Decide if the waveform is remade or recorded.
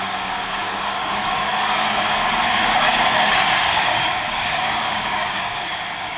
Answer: remade